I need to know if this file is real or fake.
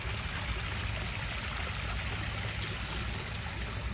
real